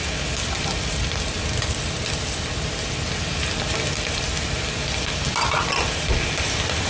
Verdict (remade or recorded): recorded